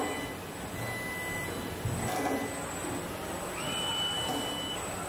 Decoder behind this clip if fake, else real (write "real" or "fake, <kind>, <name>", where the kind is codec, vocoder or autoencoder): real